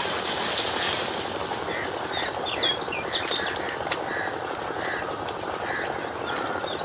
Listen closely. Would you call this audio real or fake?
real